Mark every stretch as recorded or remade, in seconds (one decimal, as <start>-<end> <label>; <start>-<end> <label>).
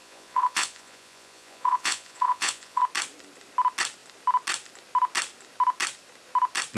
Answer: 0.0-2.8 remade; 2.8-6.8 recorded